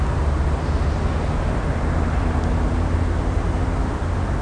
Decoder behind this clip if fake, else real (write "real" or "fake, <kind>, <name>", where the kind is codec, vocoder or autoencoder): real